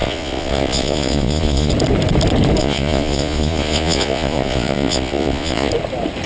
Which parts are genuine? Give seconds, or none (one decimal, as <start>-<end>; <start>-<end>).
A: 1.7-2.6; 5.7-6.3